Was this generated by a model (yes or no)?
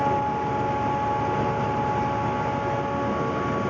no